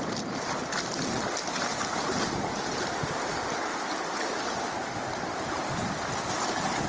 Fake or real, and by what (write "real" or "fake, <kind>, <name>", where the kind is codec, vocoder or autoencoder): real